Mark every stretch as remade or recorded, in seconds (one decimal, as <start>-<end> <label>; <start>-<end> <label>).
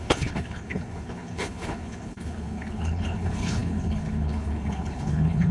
0.0-5.5 remade